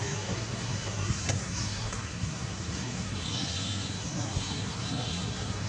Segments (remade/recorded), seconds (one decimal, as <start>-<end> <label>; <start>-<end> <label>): 0.0-5.7 remade